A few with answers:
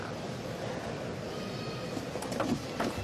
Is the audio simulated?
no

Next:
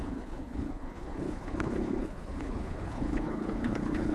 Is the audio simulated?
yes